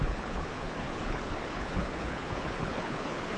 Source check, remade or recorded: remade